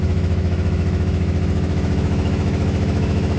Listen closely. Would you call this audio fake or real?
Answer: fake